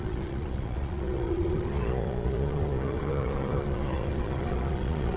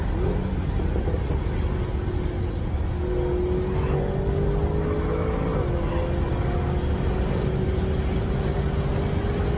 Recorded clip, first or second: second